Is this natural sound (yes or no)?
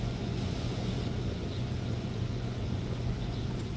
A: no